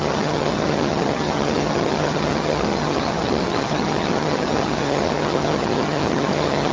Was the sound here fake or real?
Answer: fake